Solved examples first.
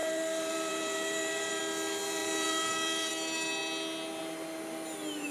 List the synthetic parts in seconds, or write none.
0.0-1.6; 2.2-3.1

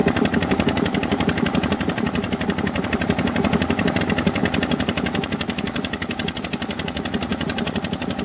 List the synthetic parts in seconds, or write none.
0.0-4.0; 4.4-6.4; 7.3-8.2

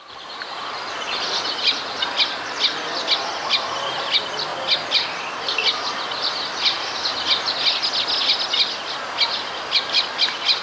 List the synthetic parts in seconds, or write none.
none